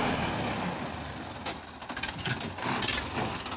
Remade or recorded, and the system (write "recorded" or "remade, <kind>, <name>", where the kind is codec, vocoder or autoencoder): recorded